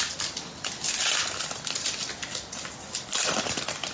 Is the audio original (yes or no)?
yes